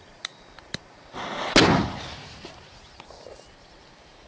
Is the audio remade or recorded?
recorded